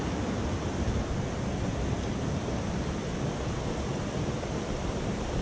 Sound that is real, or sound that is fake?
real